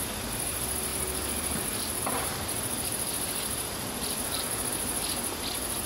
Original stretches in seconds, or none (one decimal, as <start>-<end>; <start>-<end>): 0.0-0.9; 4.4-5.9